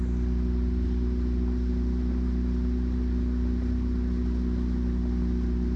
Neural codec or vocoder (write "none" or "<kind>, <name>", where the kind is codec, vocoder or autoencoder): none